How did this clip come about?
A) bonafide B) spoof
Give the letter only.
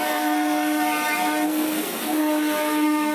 B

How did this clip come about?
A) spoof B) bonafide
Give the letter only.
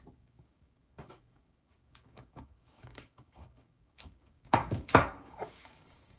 A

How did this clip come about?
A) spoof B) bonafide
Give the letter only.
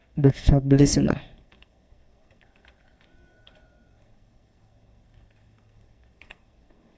A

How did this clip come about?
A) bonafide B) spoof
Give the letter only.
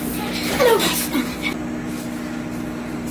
A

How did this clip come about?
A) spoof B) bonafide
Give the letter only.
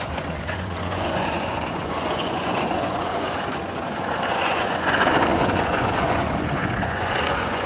A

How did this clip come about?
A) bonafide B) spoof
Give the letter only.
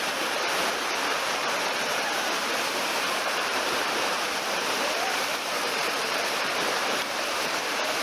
B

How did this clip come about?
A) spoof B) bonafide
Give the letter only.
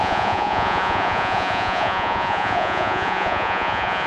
A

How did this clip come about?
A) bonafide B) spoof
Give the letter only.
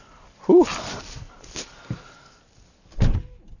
A